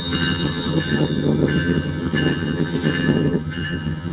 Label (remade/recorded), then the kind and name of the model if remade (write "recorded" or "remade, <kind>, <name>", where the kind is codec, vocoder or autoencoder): remade, vocoder, HiFi-GAN